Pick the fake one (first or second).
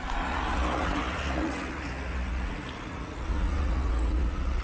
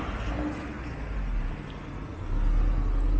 first